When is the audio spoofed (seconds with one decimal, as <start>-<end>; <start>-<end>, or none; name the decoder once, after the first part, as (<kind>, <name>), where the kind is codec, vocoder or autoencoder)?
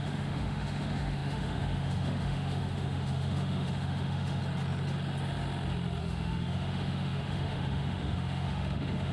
0.0-4.4 (autoencoder, DAC-VAE); 6.0-9.1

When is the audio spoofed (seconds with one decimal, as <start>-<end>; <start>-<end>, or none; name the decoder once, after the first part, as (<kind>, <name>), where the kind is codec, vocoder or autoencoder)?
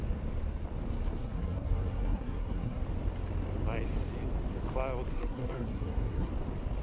1.2-2.8 (codec, SNAC); 5.1-6.3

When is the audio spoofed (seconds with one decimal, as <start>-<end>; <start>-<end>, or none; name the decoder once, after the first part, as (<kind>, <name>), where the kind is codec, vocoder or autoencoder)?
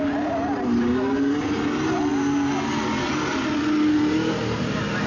none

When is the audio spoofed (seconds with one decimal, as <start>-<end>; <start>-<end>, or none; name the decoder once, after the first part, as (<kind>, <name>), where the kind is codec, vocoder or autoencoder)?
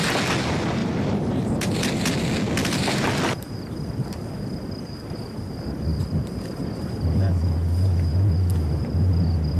0.8-1.7 (vocoder, BigVGAN v2); 5.9-6.9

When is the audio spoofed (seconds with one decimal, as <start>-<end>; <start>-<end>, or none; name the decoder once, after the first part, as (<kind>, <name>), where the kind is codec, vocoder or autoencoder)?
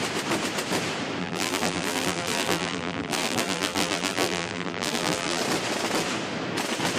1.2-5.4 (vocoder, BigVGAN v2)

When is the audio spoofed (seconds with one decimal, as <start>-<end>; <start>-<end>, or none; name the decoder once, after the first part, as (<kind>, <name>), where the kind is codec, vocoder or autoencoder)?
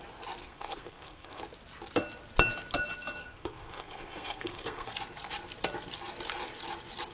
0.4-1.4 (codec, SNAC); 3.2-4.9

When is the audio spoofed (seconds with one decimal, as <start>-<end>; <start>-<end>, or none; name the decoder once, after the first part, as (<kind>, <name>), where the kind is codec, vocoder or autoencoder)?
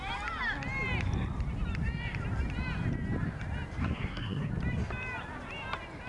3.8-4.5 (codec, SNAC)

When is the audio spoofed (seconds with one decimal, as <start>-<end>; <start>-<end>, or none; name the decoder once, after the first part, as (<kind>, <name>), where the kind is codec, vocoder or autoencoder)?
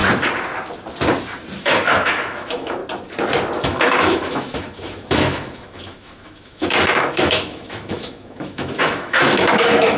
1.6-2.8 (autoencoder, DAC-VAE); 3.6-10.0